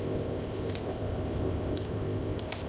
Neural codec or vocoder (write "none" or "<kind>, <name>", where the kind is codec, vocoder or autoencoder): codec, ZipCodec